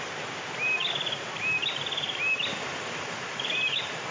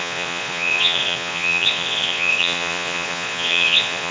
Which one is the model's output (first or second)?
second